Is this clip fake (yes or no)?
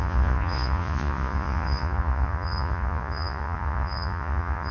yes